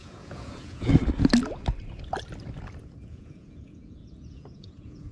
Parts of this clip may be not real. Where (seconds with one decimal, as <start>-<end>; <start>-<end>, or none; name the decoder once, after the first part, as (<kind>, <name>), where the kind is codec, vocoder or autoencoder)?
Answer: 0.0-0.9 (vocoder, Vocos); 3.0-5.1